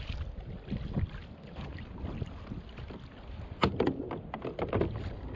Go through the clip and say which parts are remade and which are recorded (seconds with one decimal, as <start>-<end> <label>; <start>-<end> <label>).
0.0-5.4 recorded